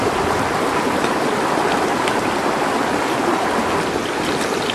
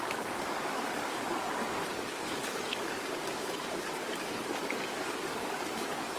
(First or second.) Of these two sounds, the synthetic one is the second